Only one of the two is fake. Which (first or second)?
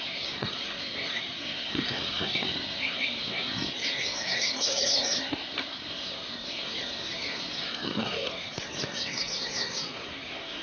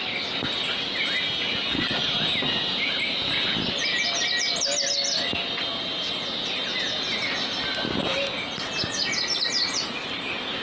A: first